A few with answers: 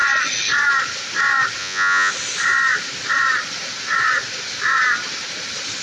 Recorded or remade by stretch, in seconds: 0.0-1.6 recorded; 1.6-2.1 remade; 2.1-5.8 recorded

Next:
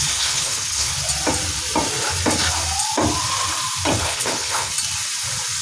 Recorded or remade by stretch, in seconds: 0.0-0.9 remade; 0.9-4.0 recorded; 4.0-4.7 remade; 4.7-5.6 recorded

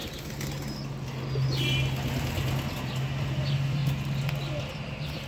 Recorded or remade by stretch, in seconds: 0.0-3.2 recorded; 3.2-3.8 remade; 3.8-4.6 recorded; 4.6-5.3 remade

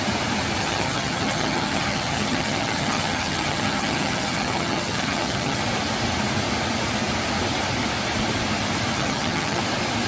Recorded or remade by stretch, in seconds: 0.0-0.6 recorded; 0.6-5.6 remade; 5.6-8.9 recorded; 8.9-9.6 remade; 9.6-10.1 recorded

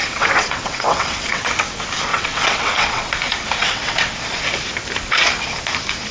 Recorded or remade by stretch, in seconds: 0.0-1.5 remade; 1.5-2.1 recorded; 2.1-3.1 remade; 3.1-3.6 recorded; 3.6-4.1 remade; 4.1-6.1 recorded

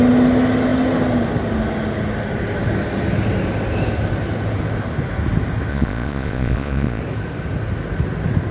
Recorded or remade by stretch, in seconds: 0.0-5.7 recorded; 5.7-7.0 remade; 7.0-8.5 recorded